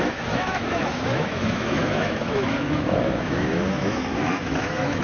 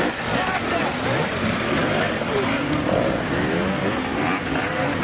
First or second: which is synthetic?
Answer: first